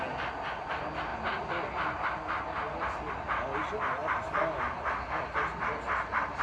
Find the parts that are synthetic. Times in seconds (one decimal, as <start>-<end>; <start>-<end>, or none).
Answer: none